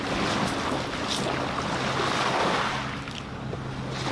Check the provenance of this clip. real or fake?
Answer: real